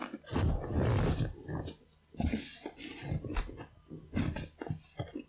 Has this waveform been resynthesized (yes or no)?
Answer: no